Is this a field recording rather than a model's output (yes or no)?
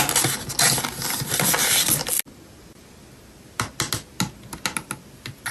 yes